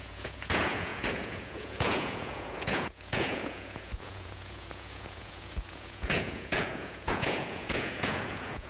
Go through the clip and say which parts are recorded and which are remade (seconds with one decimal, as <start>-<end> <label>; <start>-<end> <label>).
0.0-8.7 remade